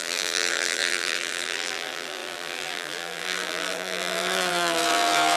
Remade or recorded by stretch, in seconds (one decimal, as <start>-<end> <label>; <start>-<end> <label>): 0.0-5.4 remade